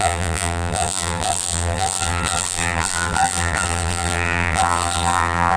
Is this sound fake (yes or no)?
yes